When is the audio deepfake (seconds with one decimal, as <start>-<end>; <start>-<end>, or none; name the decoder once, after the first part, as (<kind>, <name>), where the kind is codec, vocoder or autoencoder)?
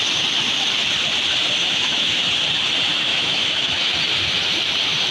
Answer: 1.6-2.2 (autoencoder, DAC-VAE); 3.1-3.9